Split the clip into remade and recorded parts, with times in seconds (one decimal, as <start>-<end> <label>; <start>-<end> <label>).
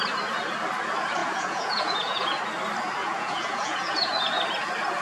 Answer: 0.0-1.2 recorded; 1.2-2.4 remade; 2.4-3.0 recorded; 3.0-4.4 remade; 4.4-5.0 recorded